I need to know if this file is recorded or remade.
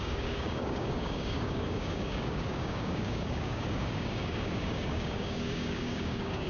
remade